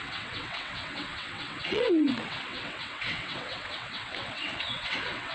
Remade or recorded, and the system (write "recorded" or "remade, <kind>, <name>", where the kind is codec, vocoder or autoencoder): remade, vocoder, WaveNeXt